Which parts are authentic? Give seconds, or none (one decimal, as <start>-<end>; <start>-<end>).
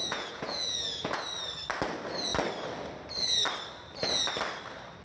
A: 1.2-5.0